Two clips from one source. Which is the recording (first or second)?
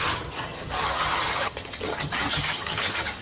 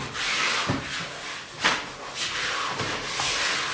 second